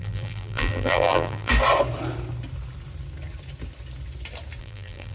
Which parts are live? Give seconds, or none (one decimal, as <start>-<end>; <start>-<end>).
1.5-4.6